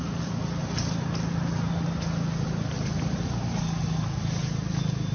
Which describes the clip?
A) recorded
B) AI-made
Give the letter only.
A